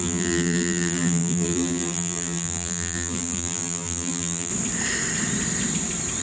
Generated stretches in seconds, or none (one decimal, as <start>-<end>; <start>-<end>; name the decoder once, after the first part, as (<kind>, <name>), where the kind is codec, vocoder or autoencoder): 0.0-4.5 (vocoder, BigVGAN v2)